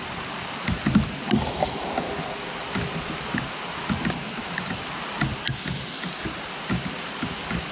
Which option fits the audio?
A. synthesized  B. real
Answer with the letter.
B